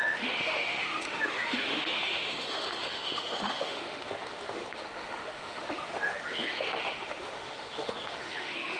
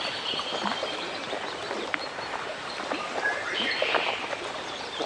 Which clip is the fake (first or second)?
first